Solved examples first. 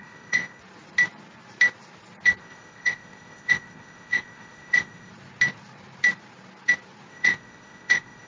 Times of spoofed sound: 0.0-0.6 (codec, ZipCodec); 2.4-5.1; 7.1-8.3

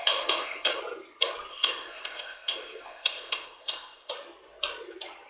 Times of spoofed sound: 0.0-0.8 (codec, ZipCodec); 1.5-4.1